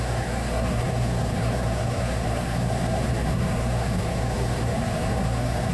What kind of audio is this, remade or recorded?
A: remade